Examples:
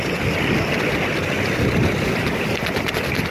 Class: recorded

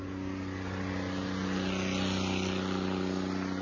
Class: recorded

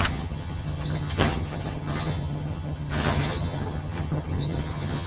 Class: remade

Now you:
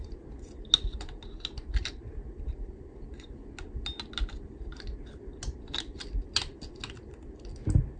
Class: recorded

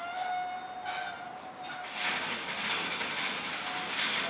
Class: recorded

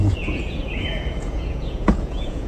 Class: remade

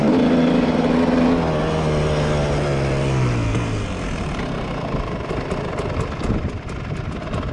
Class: recorded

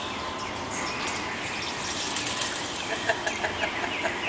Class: recorded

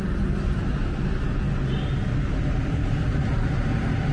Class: recorded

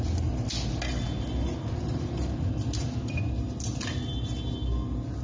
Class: recorded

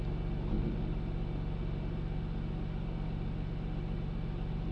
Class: recorded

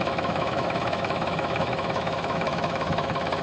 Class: remade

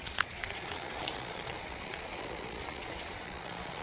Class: remade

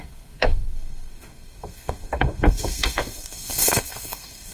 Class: remade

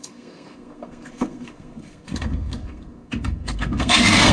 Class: remade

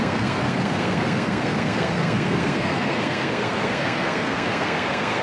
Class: remade